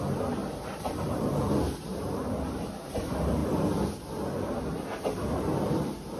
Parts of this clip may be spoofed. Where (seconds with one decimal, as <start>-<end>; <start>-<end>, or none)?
0.0-3.4; 5.3-6.2